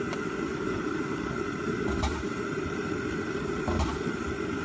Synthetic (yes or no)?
yes